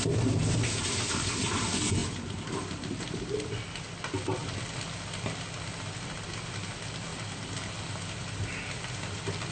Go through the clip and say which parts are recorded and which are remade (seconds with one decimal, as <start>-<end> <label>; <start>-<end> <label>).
0.0-9.5 recorded